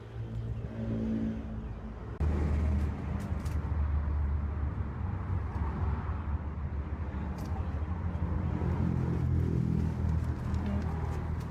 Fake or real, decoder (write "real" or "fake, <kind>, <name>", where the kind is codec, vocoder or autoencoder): real